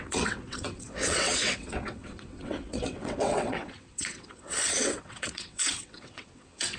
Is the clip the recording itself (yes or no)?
no